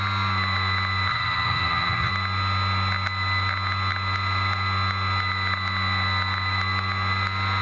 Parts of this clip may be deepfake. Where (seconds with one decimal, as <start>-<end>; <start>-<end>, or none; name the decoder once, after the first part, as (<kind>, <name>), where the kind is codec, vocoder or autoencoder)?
1.1-2.1 (vocoder, HiFi-GAN)